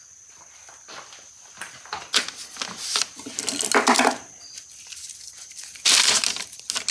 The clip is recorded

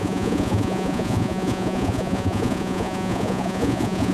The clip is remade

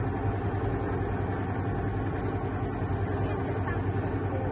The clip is recorded